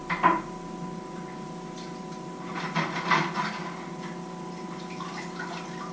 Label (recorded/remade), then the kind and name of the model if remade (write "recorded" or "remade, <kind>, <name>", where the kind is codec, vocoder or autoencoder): recorded